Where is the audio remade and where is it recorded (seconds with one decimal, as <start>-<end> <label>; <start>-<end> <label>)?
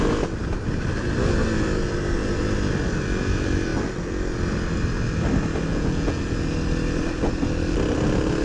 0.0-5.7 recorded; 5.7-6.2 remade; 6.2-8.4 recorded